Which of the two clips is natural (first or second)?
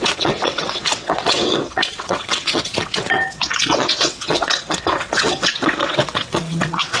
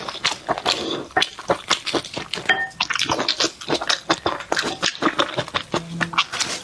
second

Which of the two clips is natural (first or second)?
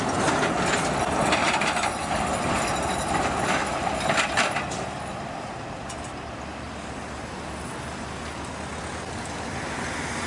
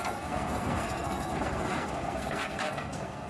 first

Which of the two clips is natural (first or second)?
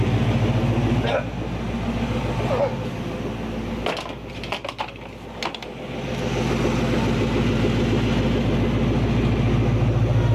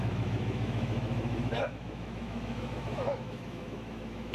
first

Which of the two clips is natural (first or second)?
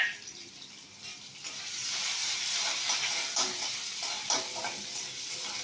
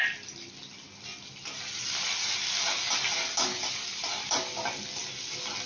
second